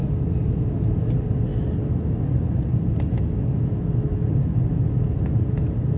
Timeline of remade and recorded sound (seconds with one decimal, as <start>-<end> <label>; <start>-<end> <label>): 0.0-6.0 recorded